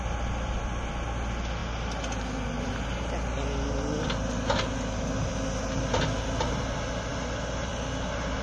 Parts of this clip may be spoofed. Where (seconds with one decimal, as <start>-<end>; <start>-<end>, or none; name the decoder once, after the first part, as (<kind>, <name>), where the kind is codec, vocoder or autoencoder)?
none